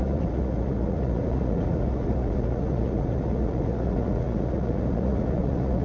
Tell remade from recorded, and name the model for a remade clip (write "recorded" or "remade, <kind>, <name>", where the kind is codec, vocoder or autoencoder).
remade, vocoder, Vocos